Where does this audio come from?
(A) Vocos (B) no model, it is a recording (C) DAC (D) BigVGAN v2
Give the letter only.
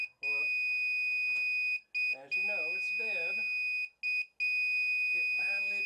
B